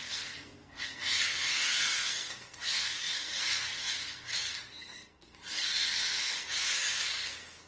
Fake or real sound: fake